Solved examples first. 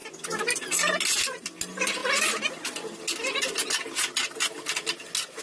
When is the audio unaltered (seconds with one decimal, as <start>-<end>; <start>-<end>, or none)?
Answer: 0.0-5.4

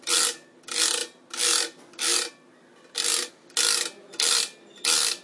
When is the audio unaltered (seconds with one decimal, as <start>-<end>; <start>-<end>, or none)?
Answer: 0.0-5.2

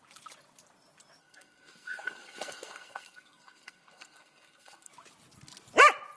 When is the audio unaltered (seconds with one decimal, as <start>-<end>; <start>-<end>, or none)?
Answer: 0.0-1.2; 4.9-6.2